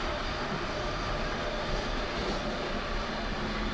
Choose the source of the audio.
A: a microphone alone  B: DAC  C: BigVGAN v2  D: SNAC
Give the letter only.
A